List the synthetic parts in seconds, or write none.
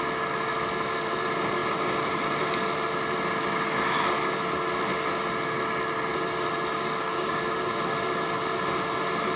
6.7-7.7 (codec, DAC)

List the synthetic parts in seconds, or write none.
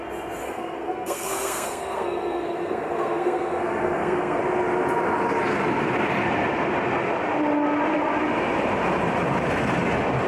0.4-4.4 (codec, SNAC)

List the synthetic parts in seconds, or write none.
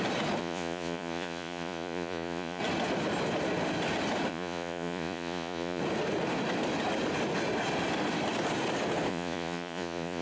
0.4-2.6 (vocoder, Vocos); 4.3-5.8; 9.1-10.2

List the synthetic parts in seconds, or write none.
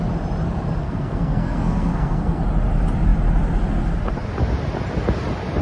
0.8-2.4 (codec, SNAC)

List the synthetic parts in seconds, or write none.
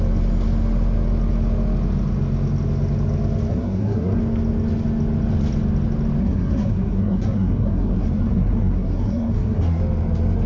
3.5-4.2 (codec, SNAC); 6.2-9.8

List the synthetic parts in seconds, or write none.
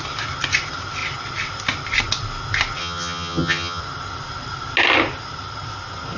2.8-3.8 (vocoder, HiFi-GAN)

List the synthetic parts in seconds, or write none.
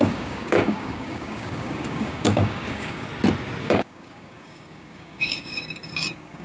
0.0-3.1 (codec, DAC); 3.6-6.4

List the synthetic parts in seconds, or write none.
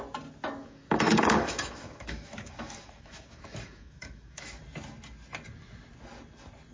0.6-4.6 (autoencoder, DAC-VAE)